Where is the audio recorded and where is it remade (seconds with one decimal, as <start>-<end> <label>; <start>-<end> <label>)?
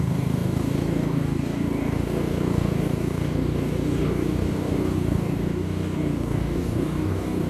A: 0.0-7.5 remade